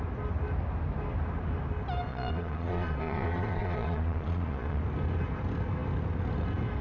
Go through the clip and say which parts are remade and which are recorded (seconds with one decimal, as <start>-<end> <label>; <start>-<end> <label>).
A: 0.0-2.1 recorded; 2.1-4.8 remade; 4.8-6.8 recorded